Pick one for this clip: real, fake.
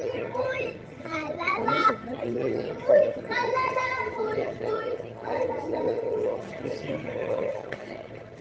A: fake